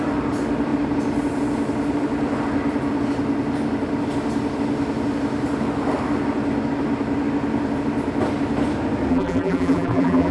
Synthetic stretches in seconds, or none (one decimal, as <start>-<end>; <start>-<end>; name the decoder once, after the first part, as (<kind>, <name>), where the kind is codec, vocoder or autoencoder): 9.1-10.3 (vocoder, BigVGAN v2)